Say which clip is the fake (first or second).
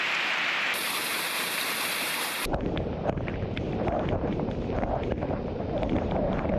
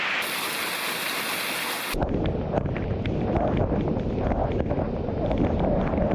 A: first